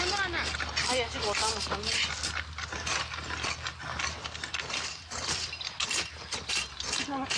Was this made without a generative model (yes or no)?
yes